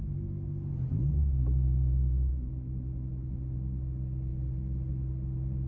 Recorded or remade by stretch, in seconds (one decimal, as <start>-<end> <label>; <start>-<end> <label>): 0.0-5.7 recorded